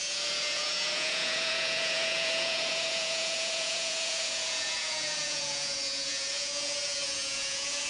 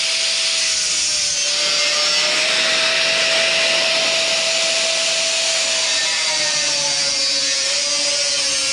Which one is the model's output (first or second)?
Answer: first